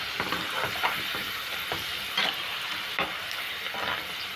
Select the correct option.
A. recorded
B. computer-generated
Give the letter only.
A